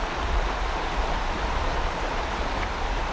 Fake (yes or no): yes